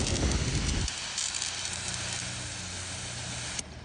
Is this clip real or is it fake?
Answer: real